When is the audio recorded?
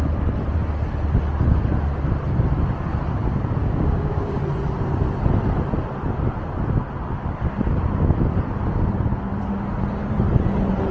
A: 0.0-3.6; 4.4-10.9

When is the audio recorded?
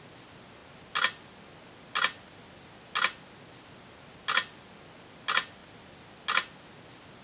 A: 0.0-7.2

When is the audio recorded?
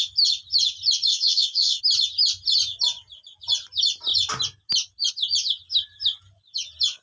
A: 0.0-1.1; 1.8-7.0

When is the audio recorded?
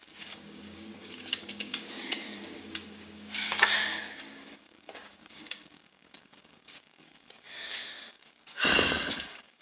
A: none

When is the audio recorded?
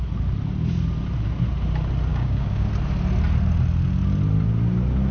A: 0.0-2.1; 2.7-5.1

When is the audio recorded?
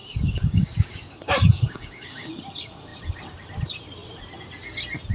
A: 2.3-5.1